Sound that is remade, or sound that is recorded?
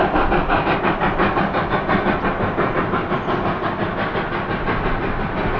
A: recorded